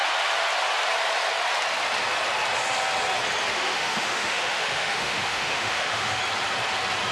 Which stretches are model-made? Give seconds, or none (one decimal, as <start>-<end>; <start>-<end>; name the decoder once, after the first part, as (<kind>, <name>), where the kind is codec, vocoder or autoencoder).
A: 3.5-6.2 (autoencoder, DAC-VAE)